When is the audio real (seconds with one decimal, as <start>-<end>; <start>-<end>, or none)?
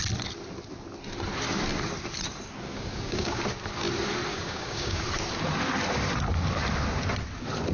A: 0.0-2.7; 3.4-4.3; 5.0-7.7